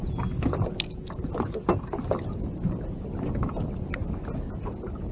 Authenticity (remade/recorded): recorded